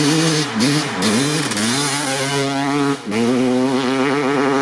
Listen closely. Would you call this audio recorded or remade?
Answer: recorded